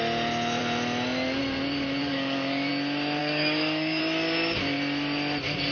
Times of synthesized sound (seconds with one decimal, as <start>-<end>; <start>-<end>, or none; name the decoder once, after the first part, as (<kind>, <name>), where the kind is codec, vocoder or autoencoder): 2.0-2.7 (codec, DAC); 3.2-4.0